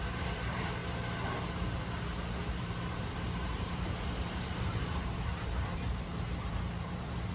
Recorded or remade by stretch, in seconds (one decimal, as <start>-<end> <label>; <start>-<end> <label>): 0.0-0.8 remade; 0.8-2.5 recorded; 2.5-7.3 remade